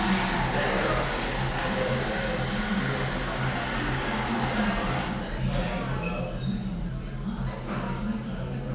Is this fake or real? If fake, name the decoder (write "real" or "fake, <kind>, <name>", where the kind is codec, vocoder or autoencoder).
real